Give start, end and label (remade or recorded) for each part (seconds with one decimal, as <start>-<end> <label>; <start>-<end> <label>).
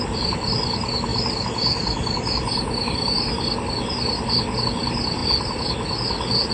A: 0.0-6.5 recorded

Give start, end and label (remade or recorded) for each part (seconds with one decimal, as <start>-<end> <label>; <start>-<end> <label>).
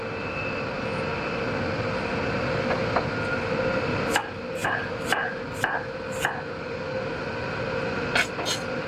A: 0.0-8.9 recorded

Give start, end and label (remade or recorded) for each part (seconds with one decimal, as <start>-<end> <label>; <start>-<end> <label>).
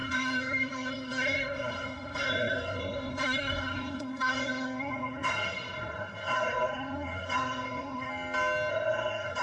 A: 0.0-8.1 remade; 8.1-8.7 recorded; 8.7-9.4 remade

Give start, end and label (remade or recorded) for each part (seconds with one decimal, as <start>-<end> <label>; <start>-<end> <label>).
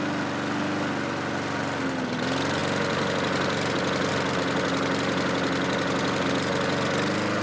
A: 0.0-7.4 recorded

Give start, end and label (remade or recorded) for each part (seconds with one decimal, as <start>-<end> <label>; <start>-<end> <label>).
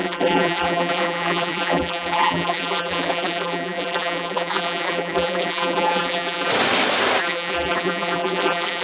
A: 0.0-6.5 remade; 6.5-7.2 recorded; 7.2-8.8 remade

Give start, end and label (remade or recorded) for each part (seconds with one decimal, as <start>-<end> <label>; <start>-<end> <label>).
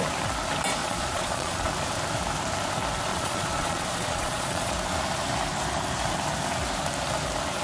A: 0.0-0.8 recorded; 0.8-1.7 remade; 1.7-3.1 recorded; 3.1-4.7 remade; 4.7-7.6 recorded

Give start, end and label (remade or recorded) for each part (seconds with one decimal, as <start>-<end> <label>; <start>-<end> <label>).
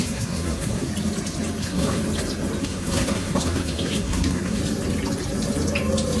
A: 0.0-0.9 remade; 0.9-1.6 recorded; 1.6-2.0 remade; 2.0-2.6 recorded; 2.6-4.6 remade; 4.6-6.2 recorded